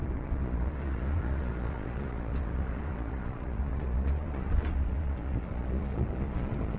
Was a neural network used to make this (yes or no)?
yes